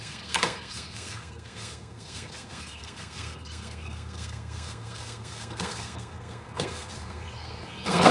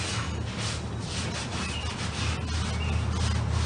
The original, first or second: second